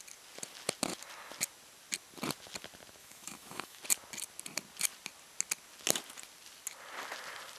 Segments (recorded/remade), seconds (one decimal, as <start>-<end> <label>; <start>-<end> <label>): 0.0-3.0 recorded; 3.0-3.8 remade; 3.8-7.6 recorded